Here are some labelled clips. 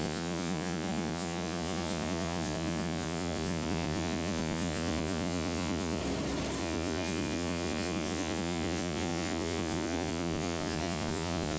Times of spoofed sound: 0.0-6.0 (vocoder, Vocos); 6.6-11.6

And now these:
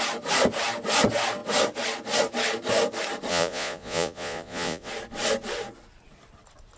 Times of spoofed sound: 3.3-4.9 (vocoder, Vocos)

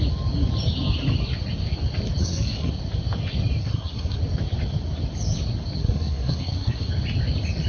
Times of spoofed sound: 2.2-2.7 (codec, SNAC); 3.6-4.2; 5.8-6.9

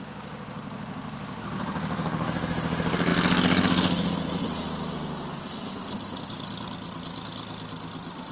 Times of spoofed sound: none

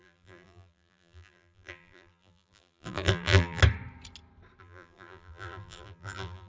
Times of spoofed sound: 0.0-3.6 (vocoder, BigVGAN v2); 4.6-6.5